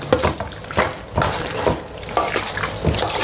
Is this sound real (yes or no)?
yes